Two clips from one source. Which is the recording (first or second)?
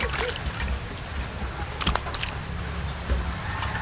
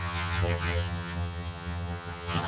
first